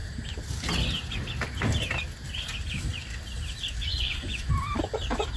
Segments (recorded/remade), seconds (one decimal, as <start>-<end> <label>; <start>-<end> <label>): 0.0-3.9 recorded; 3.9-4.5 remade; 4.5-5.4 recorded